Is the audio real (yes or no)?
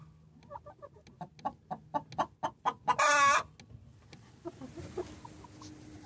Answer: yes